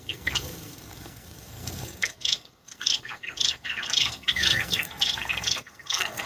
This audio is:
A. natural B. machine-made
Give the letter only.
B